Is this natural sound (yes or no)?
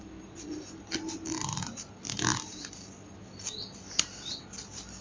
yes